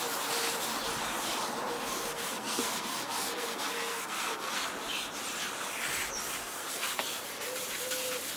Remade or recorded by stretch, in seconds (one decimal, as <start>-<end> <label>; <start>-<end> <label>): 0.0-1.9 recorded; 1.9-4.7 remade; 4.7-6.4 recorded; 6.4-7.2 remade; 7.2-8.4 recorded